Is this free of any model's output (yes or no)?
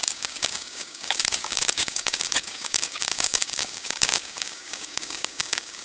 no